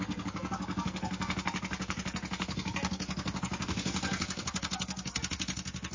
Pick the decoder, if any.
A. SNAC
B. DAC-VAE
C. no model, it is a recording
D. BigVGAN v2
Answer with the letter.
A